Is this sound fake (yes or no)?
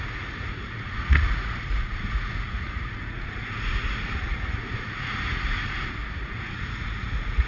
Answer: yes